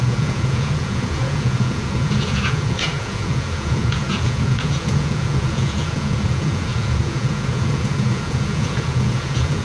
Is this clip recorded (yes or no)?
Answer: no